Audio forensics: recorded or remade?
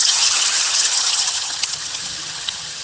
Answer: remade